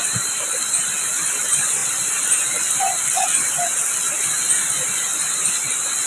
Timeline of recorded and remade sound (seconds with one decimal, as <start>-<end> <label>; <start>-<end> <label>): 0.0-6.1 recorded